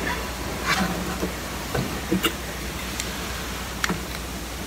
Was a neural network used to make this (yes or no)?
yes